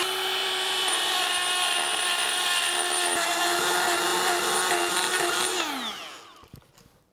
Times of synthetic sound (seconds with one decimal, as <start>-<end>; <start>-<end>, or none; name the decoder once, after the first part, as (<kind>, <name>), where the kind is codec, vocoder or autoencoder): 0.4-1.2 (vocoder, BigVGAN v2)